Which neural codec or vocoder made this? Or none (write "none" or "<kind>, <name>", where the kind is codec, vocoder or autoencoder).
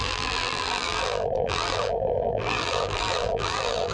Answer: vocoder, BigVGAN v2